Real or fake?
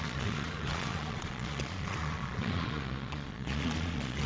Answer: fake